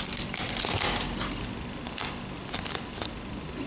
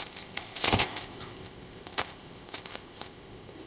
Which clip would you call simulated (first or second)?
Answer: second